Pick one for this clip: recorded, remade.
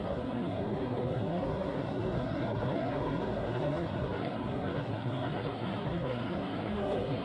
remade